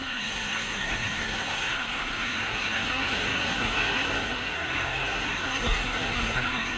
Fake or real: fake